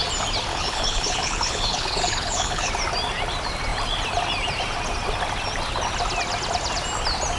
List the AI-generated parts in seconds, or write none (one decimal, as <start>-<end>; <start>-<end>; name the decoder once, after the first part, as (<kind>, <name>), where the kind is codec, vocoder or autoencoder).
0.5-2.7 (codec, HILCodec)